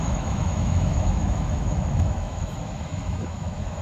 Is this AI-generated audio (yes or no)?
yes